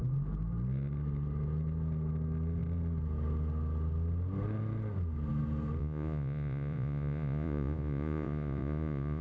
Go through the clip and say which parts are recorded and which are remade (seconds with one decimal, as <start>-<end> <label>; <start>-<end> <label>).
0.0-5.8 recorded; 5.8-9.2 remade